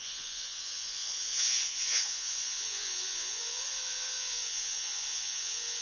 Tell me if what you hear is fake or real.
fake